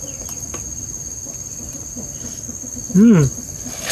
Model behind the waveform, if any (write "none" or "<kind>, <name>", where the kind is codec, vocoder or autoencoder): none